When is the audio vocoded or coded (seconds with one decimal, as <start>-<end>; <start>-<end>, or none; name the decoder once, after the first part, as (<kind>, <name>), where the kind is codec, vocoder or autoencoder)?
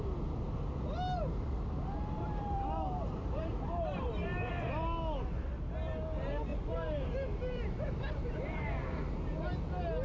1.2-4.5 (vocoder, BigVGAN v2); 6.5-8.8